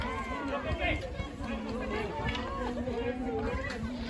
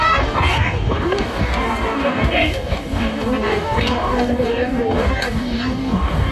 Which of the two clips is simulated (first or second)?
second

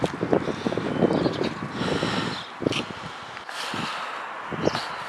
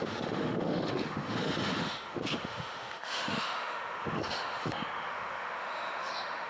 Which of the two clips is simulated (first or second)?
second